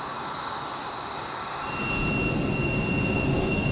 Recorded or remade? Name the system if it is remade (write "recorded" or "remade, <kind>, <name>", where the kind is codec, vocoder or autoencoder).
recorded